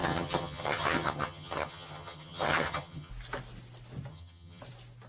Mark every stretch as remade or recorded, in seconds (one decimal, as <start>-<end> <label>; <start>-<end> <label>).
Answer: 0.0-3.1 remade; 3.1-4.1 recorded; 4.1-4.6 remade; 4.6-5.1 recorded